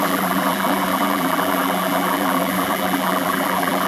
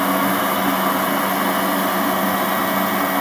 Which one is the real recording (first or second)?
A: second